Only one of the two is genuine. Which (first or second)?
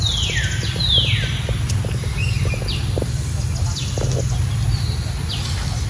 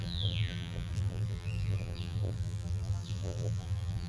first